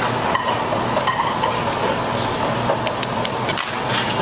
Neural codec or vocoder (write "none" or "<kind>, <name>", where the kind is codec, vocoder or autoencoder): none